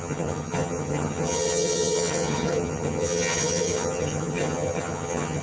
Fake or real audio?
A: fake